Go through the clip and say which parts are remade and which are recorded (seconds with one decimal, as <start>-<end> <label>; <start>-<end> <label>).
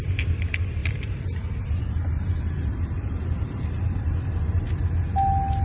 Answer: 0.0-0.8 recorded; 0.8-4.0 remade; 4.0-5.6 recorded